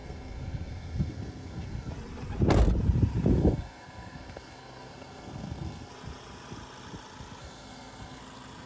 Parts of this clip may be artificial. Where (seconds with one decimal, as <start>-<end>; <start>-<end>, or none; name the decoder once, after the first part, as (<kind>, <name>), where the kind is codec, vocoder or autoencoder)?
0.0-1.9 (codec, SNAC); 3.4-5.9; 7.4-8.2